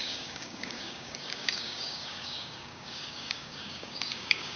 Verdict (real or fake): fake